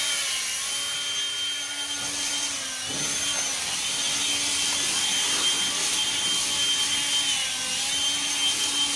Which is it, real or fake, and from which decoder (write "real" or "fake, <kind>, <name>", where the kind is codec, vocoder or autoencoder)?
real